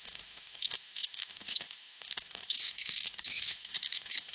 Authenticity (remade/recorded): remade